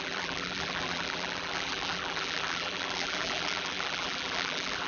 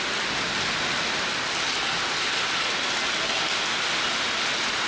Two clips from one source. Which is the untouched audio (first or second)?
second